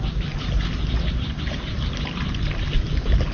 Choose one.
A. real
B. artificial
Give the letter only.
A